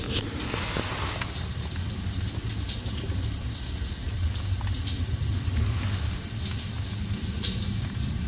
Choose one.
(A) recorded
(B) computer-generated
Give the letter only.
A